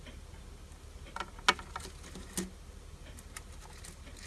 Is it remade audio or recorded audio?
recorded